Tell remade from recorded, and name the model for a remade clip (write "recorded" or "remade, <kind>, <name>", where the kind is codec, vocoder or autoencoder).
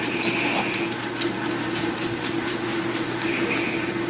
recorded